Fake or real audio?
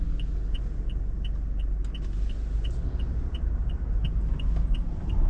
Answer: real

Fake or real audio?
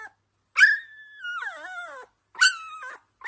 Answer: real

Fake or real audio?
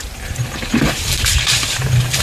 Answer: fake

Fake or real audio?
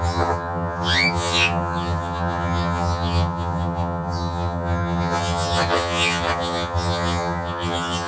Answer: fake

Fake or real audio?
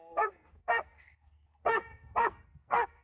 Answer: fake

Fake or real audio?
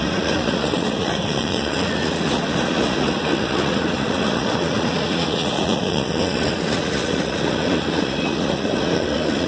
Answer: fake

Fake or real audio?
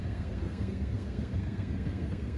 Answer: fake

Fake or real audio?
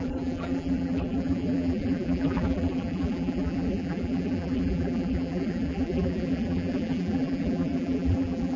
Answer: fake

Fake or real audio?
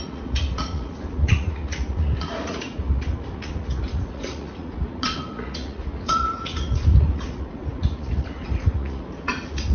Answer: fake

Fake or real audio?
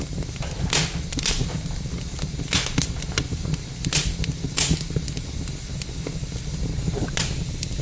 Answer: real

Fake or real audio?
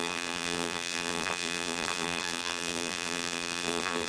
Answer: fake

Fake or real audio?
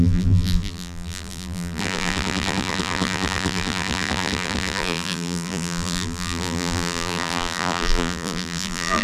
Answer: fake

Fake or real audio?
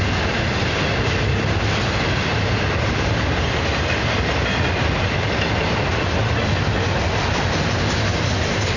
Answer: real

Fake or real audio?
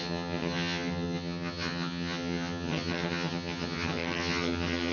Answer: fake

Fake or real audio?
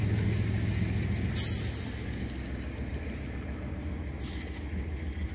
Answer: real